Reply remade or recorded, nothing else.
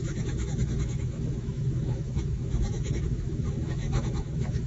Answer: remade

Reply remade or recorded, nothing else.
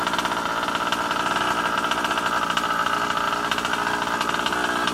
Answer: recorded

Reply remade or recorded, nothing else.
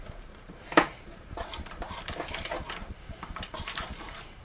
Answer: remade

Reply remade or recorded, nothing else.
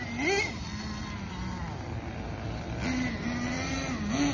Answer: recorded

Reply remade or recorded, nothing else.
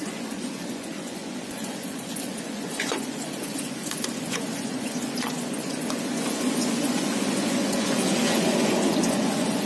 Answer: remade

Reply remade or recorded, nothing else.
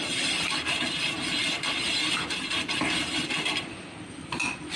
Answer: recorded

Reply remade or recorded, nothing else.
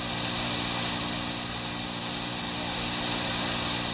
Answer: recorded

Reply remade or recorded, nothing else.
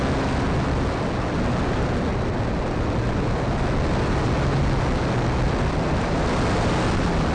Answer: recorded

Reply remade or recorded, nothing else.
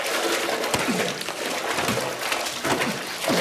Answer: recorded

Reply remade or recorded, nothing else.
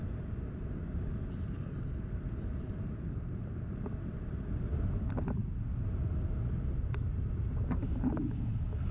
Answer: recorded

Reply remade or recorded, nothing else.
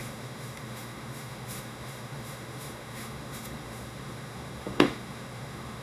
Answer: remade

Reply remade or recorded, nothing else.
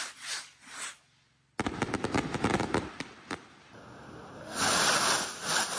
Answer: recorded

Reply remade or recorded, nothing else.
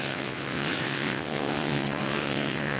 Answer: remade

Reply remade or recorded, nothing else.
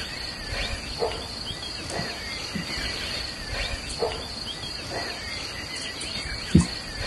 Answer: recorded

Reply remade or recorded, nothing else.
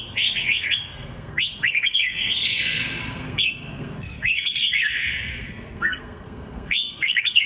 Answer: remade